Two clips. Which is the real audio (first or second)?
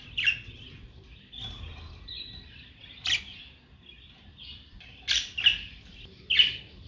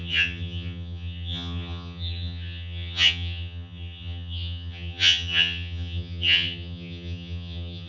first